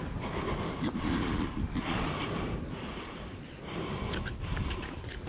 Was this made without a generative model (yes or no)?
yes